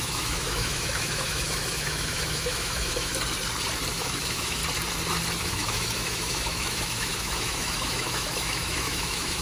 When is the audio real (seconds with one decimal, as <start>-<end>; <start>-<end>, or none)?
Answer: 3.1-3.9; 4.6-5.4